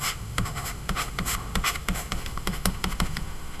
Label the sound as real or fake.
fake